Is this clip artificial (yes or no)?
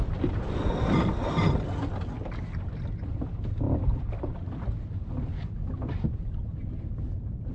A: no